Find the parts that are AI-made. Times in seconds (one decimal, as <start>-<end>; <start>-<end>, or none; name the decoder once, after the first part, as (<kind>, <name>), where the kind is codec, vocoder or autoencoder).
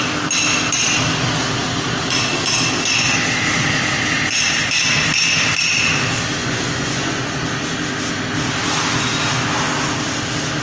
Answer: 6.4-7.3 (vocoder, Vocos)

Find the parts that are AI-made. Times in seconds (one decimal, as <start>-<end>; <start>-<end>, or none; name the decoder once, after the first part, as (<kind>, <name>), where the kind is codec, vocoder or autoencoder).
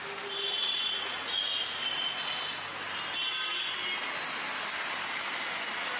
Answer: 0.5-1.4 (vocoder, Vocos)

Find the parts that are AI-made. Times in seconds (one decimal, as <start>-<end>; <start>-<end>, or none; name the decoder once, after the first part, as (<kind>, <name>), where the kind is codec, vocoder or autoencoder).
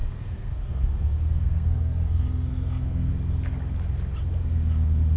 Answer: 0.0-3.1 (codec, SNAC)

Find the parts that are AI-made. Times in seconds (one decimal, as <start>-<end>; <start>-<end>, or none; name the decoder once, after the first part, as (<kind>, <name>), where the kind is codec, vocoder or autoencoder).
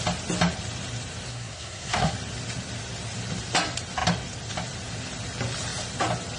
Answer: 1.3-2.1 (codec, SNAC)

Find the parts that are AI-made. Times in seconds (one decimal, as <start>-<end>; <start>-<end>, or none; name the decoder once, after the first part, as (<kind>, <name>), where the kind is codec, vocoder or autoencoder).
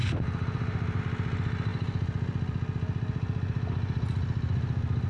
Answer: none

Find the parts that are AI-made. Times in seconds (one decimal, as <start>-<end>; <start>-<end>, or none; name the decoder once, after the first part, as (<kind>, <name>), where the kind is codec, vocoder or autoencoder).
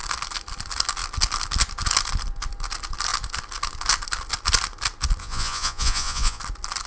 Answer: 5.2-6.4 (vocoder, Vocos)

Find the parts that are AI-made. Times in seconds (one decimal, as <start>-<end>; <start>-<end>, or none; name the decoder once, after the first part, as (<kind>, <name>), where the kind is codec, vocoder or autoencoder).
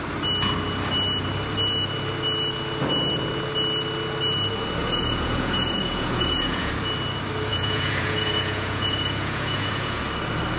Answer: 4.8-6.7 (vocoder, Vocos); 7.5-10.0